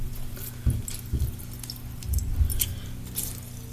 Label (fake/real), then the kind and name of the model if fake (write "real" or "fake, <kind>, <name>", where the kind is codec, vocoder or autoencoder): real